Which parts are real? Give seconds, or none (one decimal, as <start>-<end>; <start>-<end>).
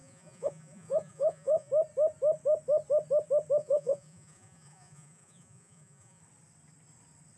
1.7-3.6; 6.2-7.4